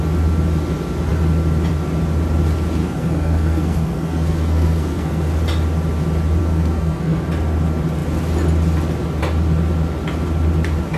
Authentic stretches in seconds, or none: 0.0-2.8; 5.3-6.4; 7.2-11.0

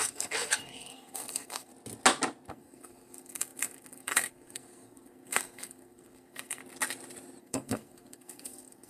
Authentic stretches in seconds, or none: 1.7-2.5; 6.6-7.4

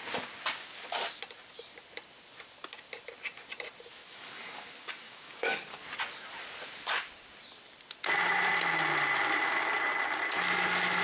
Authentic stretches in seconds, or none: 0.0-4.0; 5.9-11.0

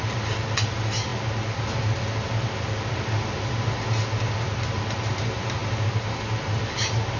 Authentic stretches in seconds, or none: 0.0-7.2